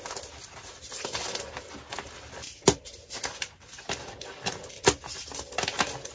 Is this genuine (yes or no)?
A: yes